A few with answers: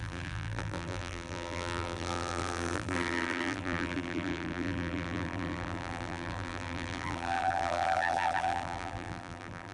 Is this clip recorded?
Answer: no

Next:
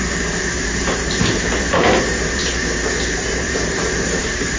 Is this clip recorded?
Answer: no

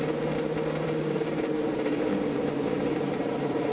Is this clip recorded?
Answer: no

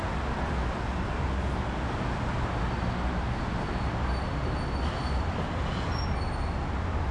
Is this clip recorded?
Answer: yes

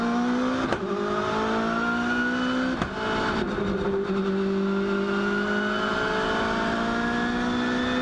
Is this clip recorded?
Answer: yes